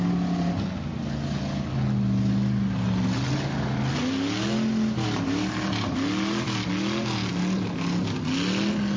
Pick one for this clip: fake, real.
real